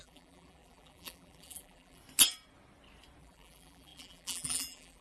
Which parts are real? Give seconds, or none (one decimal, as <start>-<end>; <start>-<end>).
2.0-3.2